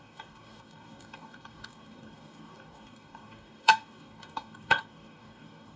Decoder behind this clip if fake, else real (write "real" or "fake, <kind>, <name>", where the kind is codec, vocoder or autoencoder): fake, codec, DAC